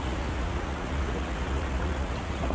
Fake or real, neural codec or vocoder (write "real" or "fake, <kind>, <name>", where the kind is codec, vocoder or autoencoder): fake, vocoder, Vocos